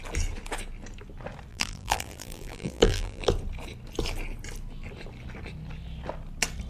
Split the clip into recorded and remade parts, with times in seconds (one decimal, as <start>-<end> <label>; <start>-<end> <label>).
0.0-1.5 recorded; 1.5-3.3 remade; 3.3-6.7 recorded